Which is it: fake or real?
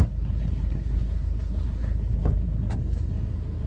fake